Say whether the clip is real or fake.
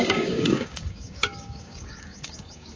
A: fake